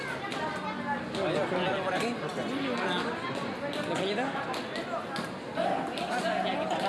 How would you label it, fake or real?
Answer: real